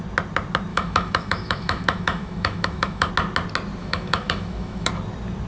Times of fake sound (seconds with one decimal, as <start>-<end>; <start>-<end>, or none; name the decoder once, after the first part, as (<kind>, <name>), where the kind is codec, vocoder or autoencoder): 0.7-3.1 (autoencoder, DAC-VAE); 3.8-4.9